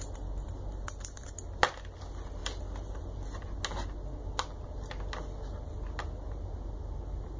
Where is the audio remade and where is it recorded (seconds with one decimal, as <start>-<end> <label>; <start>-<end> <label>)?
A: 0.0-7.4 recorded